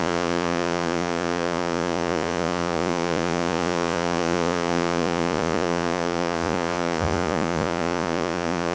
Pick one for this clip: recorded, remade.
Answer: remade